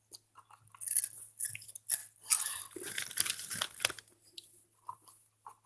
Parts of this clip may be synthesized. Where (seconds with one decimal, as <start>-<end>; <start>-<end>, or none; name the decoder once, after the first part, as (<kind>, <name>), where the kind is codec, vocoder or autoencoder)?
none